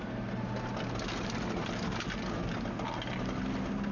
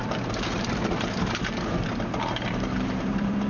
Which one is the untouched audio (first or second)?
first